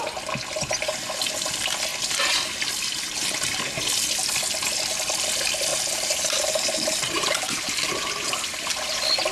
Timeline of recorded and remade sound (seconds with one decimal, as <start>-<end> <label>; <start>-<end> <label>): 0.0-5.7 recorded; 5.7-7.9 remade; 7.9-9.3 recorded